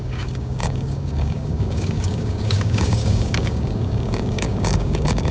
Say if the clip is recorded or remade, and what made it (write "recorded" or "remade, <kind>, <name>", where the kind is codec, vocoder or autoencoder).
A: remade, codec, DAC